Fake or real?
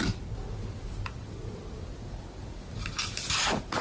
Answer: real